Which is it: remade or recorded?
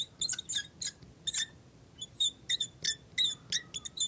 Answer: recorded